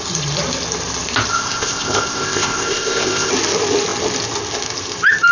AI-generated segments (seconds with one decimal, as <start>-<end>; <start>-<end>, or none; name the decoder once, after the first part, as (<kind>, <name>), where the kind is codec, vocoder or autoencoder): 1.3-3.3 (codec, ZipCodec)